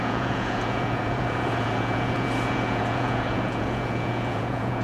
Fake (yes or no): yes